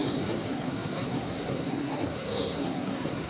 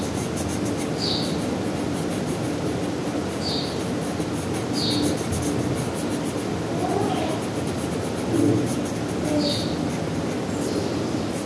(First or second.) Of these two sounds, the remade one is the first